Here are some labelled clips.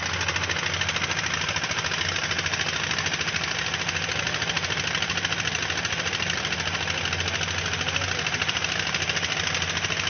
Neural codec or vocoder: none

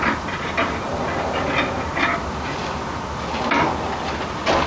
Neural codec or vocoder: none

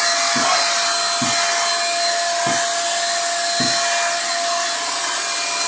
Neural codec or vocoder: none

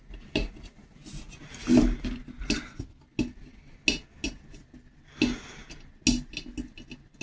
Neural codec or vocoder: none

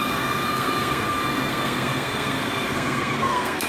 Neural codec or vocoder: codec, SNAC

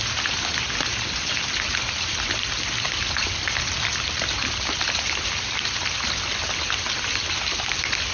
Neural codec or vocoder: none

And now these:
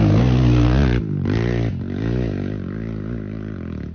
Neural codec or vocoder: none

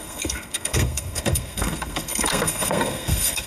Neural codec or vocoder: codec, SNAC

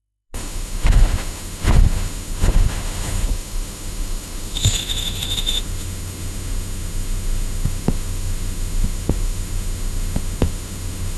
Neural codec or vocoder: autoencoder, DAC-VAE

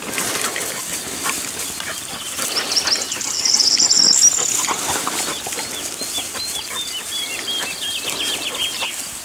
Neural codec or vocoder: none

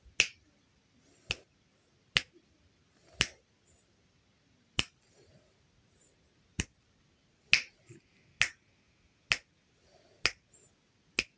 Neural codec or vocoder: none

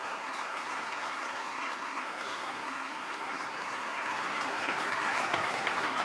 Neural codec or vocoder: codec, SNAC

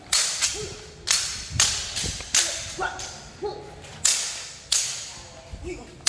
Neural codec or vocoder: none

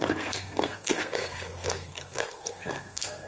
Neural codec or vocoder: codec, SNAC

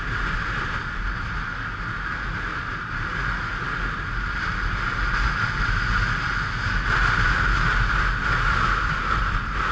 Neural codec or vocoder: none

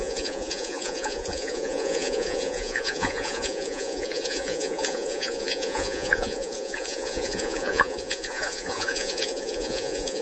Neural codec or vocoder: vocoder, Vocos